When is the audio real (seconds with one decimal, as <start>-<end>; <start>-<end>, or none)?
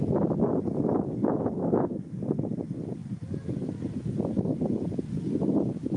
0.0-1.6; 2.2-6.0